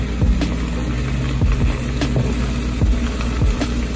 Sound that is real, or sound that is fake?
real